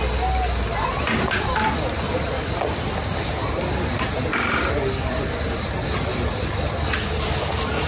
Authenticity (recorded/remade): recorded